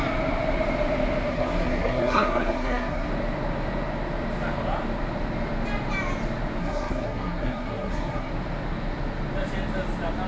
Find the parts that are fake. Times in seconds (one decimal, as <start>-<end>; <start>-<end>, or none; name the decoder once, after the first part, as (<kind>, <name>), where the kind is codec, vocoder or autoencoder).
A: 1.3-3.1 (codec, SNAC); 6.6-8.3